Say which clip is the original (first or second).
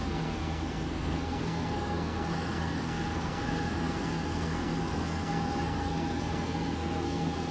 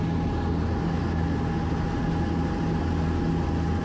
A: second